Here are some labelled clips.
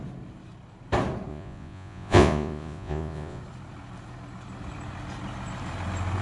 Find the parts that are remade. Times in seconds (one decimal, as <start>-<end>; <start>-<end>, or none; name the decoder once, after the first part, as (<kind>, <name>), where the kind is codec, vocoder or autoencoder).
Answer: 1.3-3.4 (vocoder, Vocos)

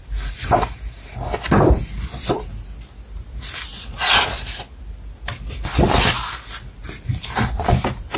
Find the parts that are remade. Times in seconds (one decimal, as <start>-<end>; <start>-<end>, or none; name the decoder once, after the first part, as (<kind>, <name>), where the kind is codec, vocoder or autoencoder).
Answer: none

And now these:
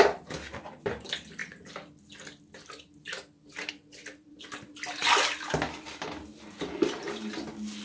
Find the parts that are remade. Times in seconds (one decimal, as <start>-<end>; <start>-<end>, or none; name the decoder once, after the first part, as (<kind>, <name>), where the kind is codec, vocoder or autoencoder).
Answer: none

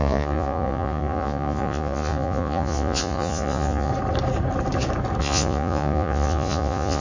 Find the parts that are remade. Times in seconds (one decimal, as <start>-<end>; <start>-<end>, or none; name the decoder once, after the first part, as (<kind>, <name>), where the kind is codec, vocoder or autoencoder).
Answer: 0.0-3.9 (vocoder, Vocos); 5.2-7.0

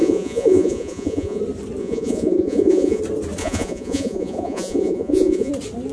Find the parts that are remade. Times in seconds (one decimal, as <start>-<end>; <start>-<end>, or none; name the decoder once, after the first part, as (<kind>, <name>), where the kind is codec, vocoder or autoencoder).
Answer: 0.0-1.4 (vocoder, Vocos); 1.8-3.0; 3.4-5.5